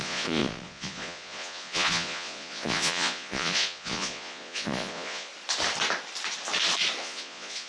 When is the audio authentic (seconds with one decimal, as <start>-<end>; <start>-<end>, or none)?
5.3-7.0